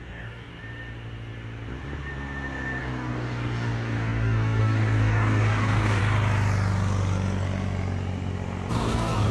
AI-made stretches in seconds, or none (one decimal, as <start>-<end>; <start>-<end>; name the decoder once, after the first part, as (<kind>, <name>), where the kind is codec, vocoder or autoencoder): 0.0-0.5 (codec, DAC); 2.8-6.0; 8.7-9.3

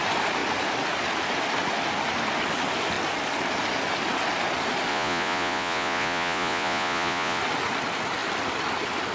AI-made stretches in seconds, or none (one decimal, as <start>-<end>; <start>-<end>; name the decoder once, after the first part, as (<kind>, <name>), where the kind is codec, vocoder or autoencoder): 4.9-7.4 (vocoder, Vocos)

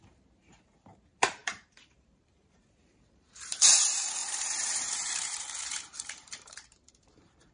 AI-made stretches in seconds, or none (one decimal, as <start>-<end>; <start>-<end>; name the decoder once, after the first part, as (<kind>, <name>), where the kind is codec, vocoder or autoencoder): 0.0-7.5 (vocoder, BigVGAN v2)

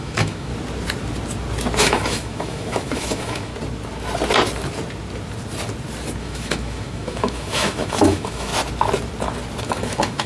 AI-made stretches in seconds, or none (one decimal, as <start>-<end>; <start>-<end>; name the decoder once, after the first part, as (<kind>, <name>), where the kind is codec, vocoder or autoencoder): 0.0-0.5 (autoencoder, DAC-VAE); 1.8-3.5; 6.2-8.5; 9.6-10.3

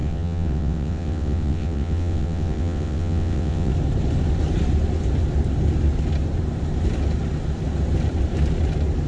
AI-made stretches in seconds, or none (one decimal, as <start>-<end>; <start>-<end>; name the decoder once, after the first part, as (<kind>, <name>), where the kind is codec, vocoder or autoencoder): 0.0-3.7 (vocoder, WaveNeXt)

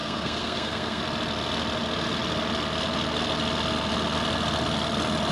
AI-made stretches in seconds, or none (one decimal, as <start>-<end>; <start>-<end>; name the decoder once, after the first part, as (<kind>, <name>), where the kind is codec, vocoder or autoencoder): 0.0-1.0 (codec, SNAC)

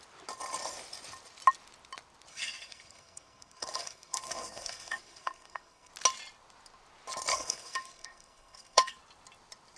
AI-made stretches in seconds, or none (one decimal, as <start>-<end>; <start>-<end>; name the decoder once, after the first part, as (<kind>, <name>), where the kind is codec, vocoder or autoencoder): 2.3-5.9 (codec, SNAC); 7.3-9.0

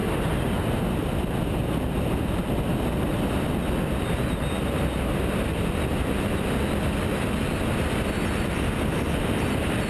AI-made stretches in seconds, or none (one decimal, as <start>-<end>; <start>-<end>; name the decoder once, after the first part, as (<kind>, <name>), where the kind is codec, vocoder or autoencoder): none